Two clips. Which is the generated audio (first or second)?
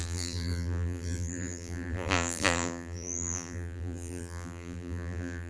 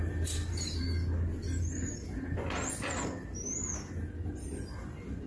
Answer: first